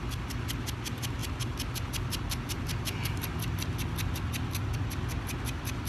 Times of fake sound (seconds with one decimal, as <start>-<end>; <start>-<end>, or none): none